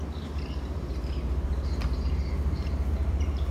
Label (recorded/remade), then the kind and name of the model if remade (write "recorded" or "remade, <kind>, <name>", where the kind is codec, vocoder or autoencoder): remade, vocoder, BigVGAN v2